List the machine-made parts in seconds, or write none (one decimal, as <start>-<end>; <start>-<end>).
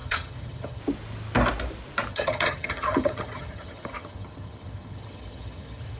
0.0-0.8; 2.1-6.0